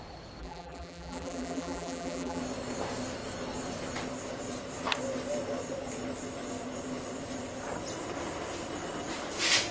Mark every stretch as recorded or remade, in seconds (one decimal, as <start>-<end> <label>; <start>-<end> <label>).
0.0-0.4 recorded; 0.4-2.4 remade; 2.4-9.7 recorded